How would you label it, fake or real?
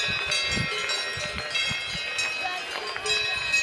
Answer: real